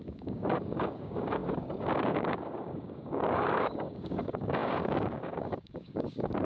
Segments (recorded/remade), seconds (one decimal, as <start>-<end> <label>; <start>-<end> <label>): 0.0-6.4 remade